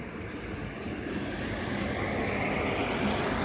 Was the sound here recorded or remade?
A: recorded